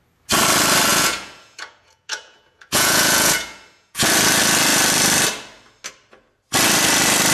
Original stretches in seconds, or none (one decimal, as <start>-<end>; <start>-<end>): 0.0-0.9; 4.0-7.3